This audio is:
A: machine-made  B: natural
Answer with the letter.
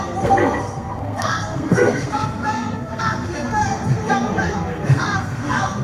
A